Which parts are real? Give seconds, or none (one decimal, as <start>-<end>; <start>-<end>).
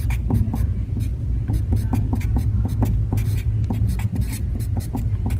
0.0-5.4